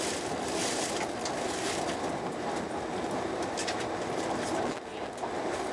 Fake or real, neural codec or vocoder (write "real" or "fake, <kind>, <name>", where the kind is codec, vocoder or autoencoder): real